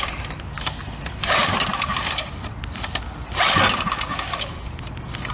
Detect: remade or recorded recorded